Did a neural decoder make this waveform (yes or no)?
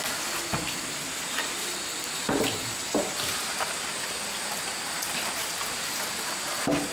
no